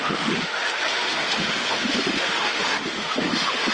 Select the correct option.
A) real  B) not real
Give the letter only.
B